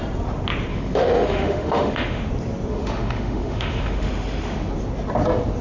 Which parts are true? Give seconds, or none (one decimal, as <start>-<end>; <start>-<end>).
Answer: 0.0-0.7; 2.3-2.7; 4.7-5.6